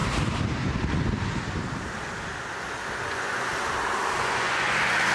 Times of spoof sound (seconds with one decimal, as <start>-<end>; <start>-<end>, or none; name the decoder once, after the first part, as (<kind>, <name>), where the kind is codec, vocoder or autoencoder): 3.1-3.5 (vocoder, Vocos); 4.2-5.1